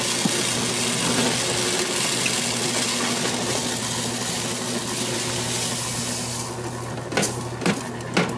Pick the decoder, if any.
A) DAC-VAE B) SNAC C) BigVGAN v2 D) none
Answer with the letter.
D